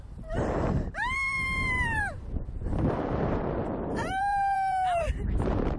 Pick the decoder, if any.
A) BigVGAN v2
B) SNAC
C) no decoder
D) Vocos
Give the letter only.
A